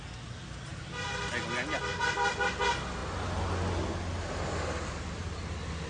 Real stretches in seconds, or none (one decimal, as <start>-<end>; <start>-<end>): 0.0-5.9